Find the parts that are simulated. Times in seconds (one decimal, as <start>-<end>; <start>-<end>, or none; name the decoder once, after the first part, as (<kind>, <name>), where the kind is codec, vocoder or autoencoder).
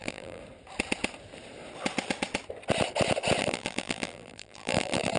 0.0-0.4 (vocoder, BigVGAN v2); 3.4-5.2